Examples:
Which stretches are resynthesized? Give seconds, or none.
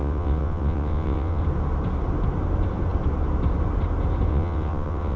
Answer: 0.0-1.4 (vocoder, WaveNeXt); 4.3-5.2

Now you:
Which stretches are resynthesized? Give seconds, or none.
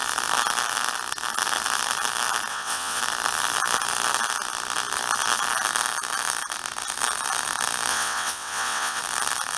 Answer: 2.5-3.0 (vocoder, WaveNeXt); 7.9-9.0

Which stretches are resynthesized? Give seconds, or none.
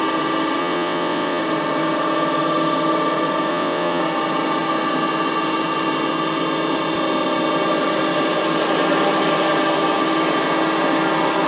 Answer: 0.6-1.4 (vocoder, WaveNeXt); 3.5-4.0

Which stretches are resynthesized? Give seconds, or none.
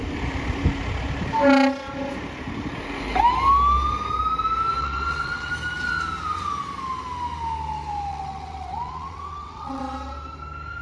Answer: 4.8-5.5 (vocoder, WaveNeXt); 8.1-9.8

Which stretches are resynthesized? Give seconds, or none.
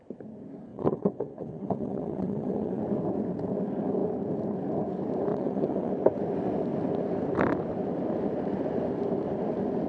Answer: 0.7-2.8 (vocoder, WaveNeXt); 5.3-5.9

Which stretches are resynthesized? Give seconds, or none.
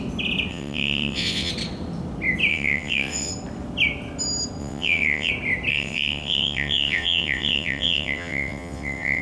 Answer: 0.5-1.5 (vocoder, WaveNeXt); 2.5-3.3; 4.6-5.3; 5.7-9.2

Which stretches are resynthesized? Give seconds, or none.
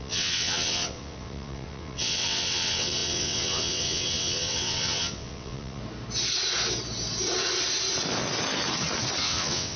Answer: 0.0-5.8 (vocoder, WaveNeXt); 9.2-9.8